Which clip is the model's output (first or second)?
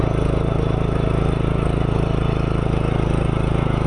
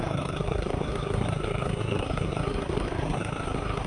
second